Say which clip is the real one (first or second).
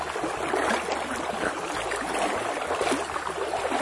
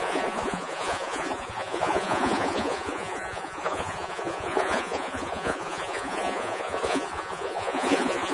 first